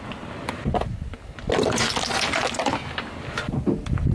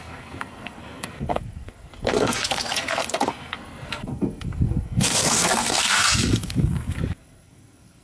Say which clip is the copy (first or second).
second